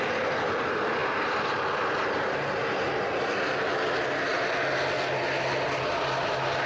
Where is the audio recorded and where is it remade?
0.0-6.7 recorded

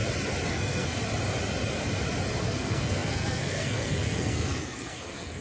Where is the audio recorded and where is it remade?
0.0-0.5 recorded; 0.5-1.0 remade; 1.0-2.4 recorded; 2.4-5.4 remade

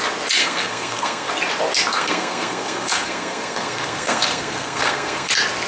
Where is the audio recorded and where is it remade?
0.0-0.4 recorded; 0.4-1.3 remade; 1.3-1.9 recorded; 1.9-5.3 remade; 5.3-5.7 recorded